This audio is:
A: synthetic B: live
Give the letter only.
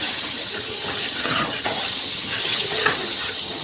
A